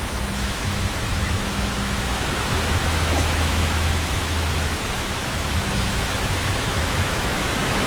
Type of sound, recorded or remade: remade